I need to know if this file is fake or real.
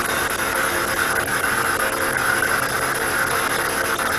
real